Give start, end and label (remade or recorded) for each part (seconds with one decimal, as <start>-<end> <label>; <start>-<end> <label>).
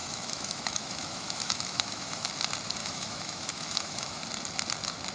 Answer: 0.0-2.3 remade; 2.3-2.8 recorded; 2.8-4.2 remade; 4.2-5.1 recorded